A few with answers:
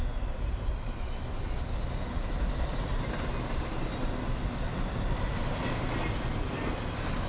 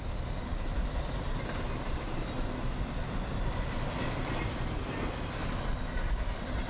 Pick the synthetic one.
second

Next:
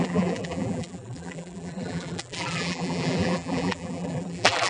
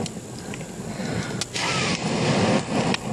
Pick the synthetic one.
first